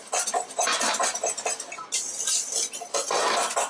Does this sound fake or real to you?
real